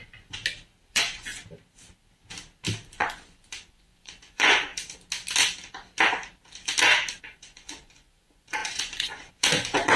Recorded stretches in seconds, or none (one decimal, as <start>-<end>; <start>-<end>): 0.4-0.9; 1.4-2.9; 4.7-7.2